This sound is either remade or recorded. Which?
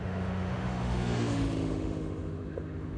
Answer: remade